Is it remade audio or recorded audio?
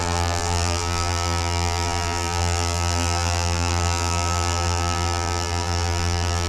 remade